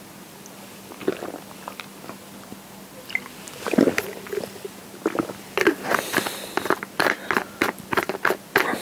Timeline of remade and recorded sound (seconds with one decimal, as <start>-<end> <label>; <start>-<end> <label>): 0.0-8.8 recorded